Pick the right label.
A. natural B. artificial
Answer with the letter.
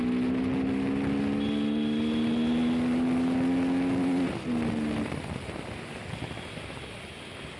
A